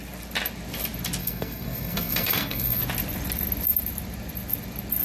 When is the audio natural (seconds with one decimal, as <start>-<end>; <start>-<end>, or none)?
0.0-1.2; 2.8-5.0